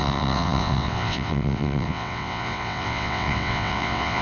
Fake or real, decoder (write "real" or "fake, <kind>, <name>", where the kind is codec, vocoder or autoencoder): fake, vocoder, WaveNeXt